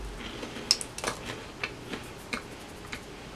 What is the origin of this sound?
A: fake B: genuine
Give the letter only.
B